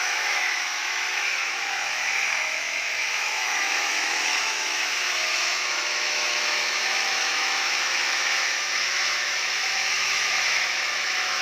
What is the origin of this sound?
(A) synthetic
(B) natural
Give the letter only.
A